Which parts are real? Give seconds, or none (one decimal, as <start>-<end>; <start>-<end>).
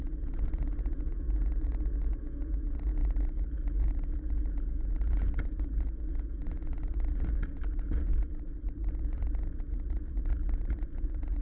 8.1-8.9